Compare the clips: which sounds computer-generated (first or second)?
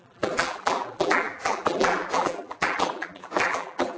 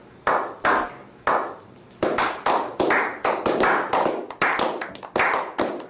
first